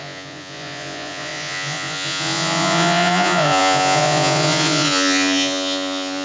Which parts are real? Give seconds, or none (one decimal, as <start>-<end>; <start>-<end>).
none